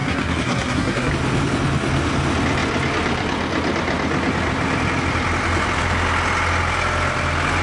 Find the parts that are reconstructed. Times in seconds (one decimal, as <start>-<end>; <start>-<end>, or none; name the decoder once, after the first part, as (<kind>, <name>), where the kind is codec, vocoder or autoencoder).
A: 0.0-1.1 (codec, SNAC)